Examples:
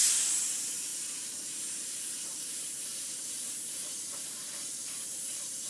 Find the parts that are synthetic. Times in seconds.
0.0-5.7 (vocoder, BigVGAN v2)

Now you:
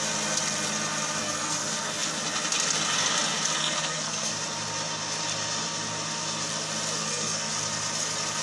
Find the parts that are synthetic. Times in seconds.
1.2-2.1 (codec, SNAC); 3.6-4.3; 7.0-7.5